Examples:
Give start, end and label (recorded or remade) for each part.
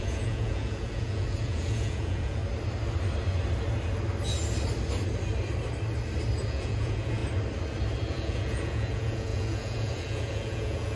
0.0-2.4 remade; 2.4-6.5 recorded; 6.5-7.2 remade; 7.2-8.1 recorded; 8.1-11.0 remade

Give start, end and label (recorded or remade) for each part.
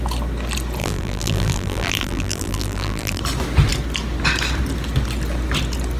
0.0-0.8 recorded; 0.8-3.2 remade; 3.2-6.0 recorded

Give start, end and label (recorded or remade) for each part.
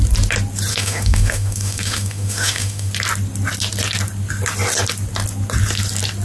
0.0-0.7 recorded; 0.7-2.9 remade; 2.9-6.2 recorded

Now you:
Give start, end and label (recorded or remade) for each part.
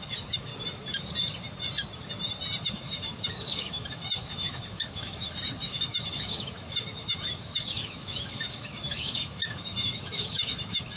0.0-0.5 remade; 0.5-2.6 recorded; 2.6-11.0 remade